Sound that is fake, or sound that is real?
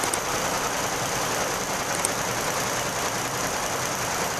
real